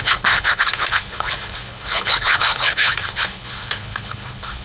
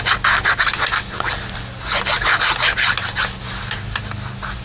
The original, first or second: second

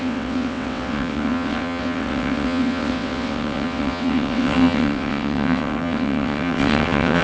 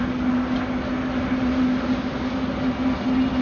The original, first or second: second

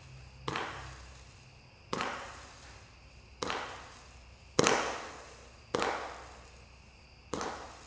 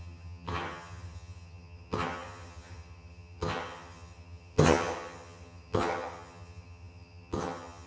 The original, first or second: first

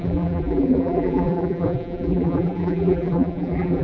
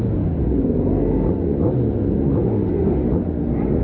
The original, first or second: second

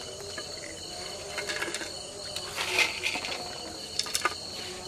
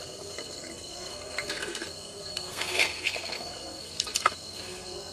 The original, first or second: first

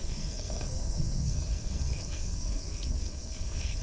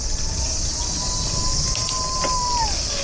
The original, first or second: second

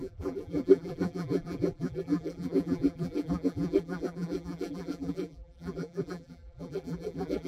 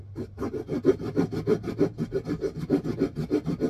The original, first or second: second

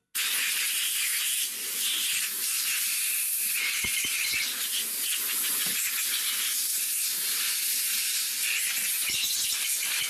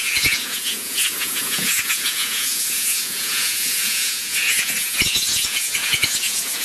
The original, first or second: first